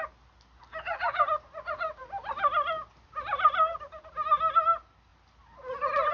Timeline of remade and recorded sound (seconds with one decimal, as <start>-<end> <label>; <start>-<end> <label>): 0.0-6.1 recorded